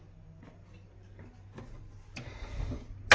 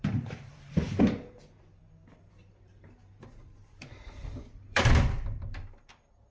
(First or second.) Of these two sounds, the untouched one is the first